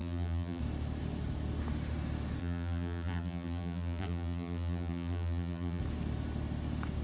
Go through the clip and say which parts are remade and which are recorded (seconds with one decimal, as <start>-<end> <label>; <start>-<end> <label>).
0.0-0.6 remade; 0.6-2.4 recorded; 2.4-5.8 remade; 5.8-7.0 recorded